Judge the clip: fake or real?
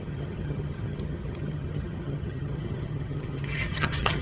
fake